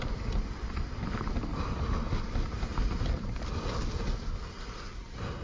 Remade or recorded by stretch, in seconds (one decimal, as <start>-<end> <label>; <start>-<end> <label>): 0.0-5.4 recorded